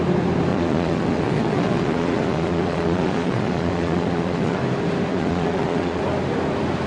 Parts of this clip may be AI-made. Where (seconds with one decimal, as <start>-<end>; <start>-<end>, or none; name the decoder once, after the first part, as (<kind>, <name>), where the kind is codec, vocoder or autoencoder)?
0.5-4.6 (vocoder, Vocos); 5.1-6.0